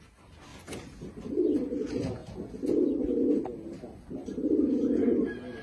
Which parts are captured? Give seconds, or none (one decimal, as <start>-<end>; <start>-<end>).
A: 0.0-0.5; 1.3-3.9; 4.7-5.6